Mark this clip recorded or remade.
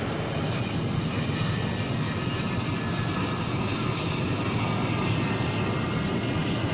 recorded